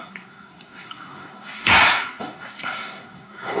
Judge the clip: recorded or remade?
remade